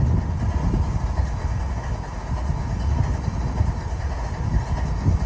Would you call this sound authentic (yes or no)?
yes